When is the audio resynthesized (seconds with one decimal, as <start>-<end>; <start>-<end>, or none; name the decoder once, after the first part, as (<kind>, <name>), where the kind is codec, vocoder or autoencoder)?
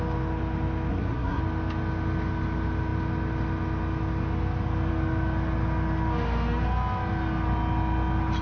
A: 0.9-1.4 (codec, SNAC)